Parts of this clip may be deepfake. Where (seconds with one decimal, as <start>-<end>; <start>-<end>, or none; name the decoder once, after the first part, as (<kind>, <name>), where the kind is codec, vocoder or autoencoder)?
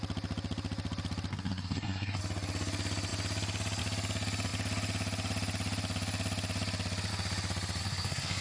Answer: 1.3-2.2 (codec, SNAC); 7.8-8.4